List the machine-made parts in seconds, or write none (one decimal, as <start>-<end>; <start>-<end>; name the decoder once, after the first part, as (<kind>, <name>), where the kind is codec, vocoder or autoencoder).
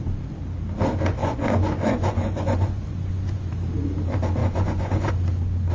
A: 1.2-3.5 (vocoder, Vocos); 4.4-5.1